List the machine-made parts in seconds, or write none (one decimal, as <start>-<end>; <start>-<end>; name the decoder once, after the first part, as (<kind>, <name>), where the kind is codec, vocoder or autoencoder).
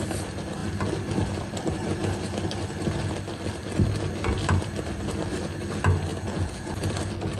6.1-6.8 (vocoder, Vocos)